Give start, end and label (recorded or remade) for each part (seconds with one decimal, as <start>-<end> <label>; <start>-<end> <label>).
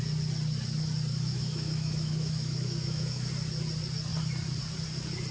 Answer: 0.0-1.1 recorded; 1.1-3.3 remade; 3.3-5.3 recorded